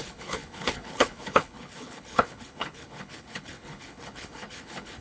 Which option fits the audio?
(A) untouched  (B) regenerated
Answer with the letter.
B